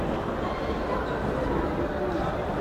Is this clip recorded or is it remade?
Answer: recorded